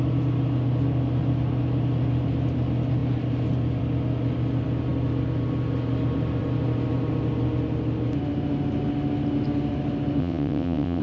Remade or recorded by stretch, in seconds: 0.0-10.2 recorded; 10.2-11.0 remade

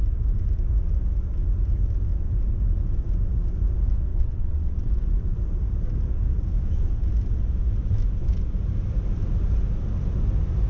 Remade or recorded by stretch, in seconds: 0.0-4.1 recorded; 4.1-4.9 remade; 4.9-10.7 recorded

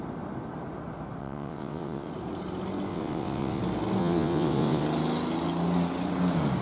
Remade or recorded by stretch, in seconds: 0.0-1.2 recorded; 1.2-2.1 remade; 2.1-2.9 recorded; 2.9-3.6 remade; 3.6-4.0 recorded; 4.0-4.8 remade; 4.8-6.6 recorded

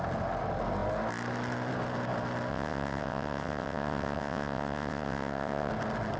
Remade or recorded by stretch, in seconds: 0.0-2.5 recorded; 2.5-5.7 remade; 5.7-6.2 recorded

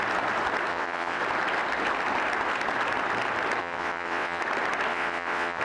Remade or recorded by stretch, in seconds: 0.0-0.7 recorded; 0.7-1.2 remade; 1.2-3.6 recorded; 3.6-4.4 remade; 4.4-4.9 recorded; 4.9-5.6 remade

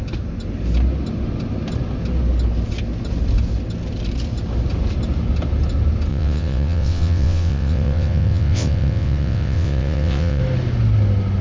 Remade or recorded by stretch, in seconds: 0.0-6.1 recorded; 6.1-10.4 remade; 10.4-11.4 recorded